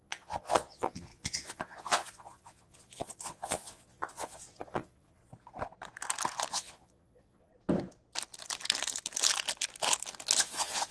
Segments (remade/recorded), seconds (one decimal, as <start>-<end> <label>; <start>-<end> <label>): 0.0-5.2 remade; 5.2-6.5 recorded; 6.5-7.5 remade; 7.5-10.4 recorded; 10.4-10.9 remade